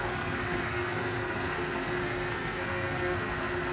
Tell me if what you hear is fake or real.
fake